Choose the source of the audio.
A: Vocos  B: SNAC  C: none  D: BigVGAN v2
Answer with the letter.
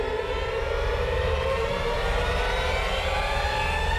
D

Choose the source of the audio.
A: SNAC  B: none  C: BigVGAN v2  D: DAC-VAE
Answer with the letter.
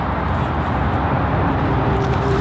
C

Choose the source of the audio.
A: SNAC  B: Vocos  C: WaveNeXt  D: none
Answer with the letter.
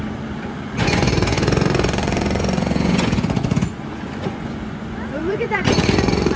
B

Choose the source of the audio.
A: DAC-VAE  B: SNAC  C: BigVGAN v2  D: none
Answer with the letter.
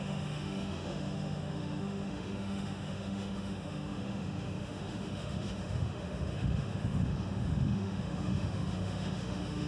A